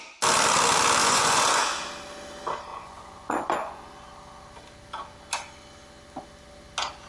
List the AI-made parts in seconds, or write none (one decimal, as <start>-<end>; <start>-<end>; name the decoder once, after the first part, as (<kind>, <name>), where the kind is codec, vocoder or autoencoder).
1.0-1.6 (vocoder, Vocos); 2.7-3.8